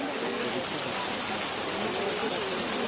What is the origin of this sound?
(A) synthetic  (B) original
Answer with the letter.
B